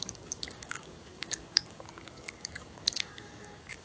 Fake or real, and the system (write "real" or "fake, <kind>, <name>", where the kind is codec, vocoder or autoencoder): fake, codec, DAC